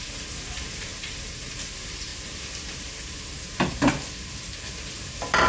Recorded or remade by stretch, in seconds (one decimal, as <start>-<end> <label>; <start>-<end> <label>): 0.0-2.1 remade; 2.1-5.5 recorded